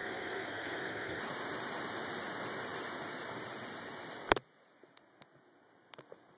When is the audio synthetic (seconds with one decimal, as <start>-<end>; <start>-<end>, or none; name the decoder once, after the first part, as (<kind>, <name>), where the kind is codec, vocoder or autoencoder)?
0.0-1.2 (codec, SNAC)